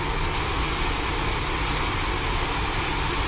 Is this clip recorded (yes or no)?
yes